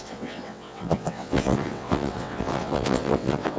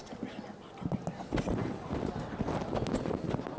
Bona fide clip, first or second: second